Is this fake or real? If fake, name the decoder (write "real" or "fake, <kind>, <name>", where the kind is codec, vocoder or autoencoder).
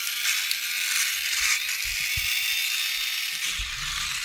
real